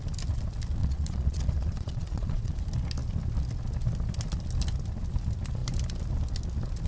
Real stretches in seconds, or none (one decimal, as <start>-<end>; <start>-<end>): 0.0-0.8; 2.6-6.9